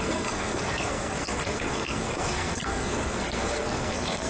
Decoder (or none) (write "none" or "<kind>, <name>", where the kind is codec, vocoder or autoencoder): codec, SNAC